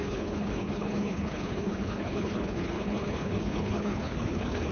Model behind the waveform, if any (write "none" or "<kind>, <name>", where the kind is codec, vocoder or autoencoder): codec, HILCodec